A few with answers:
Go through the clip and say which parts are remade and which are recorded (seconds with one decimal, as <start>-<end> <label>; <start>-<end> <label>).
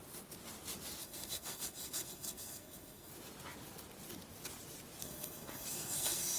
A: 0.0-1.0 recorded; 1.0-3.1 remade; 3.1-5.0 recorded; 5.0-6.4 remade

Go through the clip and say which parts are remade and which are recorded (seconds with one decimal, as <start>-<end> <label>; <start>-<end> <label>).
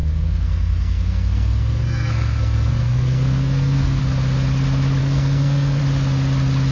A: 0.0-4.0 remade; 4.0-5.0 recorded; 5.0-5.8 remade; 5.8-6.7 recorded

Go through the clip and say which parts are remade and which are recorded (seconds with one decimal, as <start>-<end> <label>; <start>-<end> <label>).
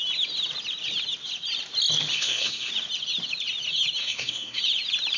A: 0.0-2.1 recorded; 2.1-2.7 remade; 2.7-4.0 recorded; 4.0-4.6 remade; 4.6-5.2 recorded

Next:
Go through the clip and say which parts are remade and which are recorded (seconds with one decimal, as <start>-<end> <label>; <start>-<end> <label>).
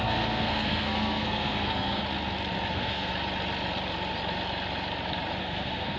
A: 0.0-2.0 remade; 2.0-2.7 recorded; 2.7-3.1 remade; 3.1-5.4 recorded; 5.4-6.0 remade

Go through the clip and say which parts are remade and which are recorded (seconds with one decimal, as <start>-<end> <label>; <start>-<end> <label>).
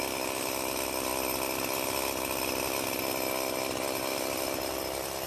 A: 0.0-5.3 recorded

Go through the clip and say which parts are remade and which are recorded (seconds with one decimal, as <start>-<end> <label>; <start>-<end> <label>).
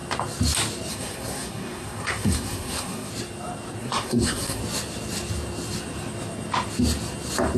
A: 0.0-0.9 recorded; 0.9-3.1 remade; 3.1-3.8 recorded; 3.8-4.6 remade; 4.6-7.6 recorded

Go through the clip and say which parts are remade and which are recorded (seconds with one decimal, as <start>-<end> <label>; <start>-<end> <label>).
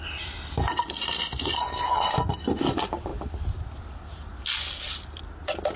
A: 0.0-5.8 recorded